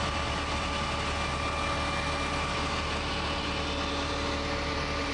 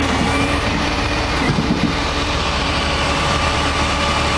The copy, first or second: second